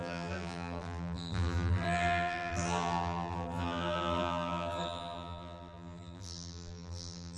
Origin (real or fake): fake